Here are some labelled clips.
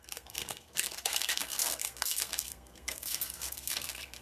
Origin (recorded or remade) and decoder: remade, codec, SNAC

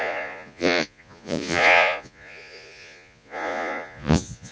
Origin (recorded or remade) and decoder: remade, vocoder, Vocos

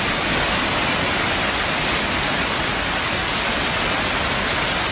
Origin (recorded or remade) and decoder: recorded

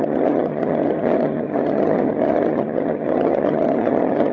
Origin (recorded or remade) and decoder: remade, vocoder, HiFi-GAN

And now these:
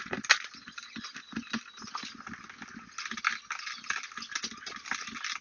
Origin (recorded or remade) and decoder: recorded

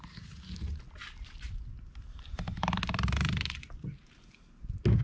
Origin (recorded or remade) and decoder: recorded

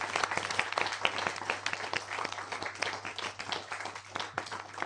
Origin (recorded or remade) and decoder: recorded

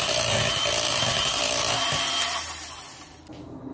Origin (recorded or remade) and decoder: recorded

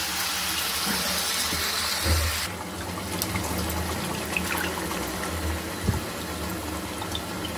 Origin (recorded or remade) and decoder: recorded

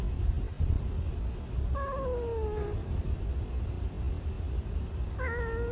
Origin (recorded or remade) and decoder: recorded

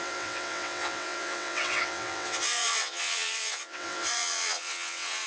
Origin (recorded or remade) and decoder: remade, vocoder, WaveNeXt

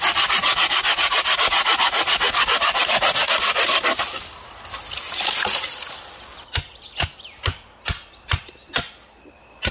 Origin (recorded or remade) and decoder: recorded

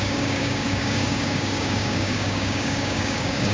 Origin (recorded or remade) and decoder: remade, codec, DAC